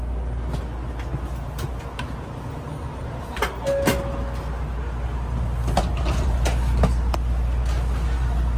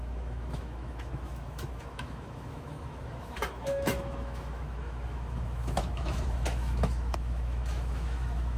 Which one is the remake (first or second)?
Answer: second